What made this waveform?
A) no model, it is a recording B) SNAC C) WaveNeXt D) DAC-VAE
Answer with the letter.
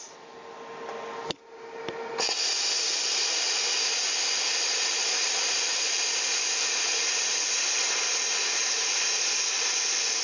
A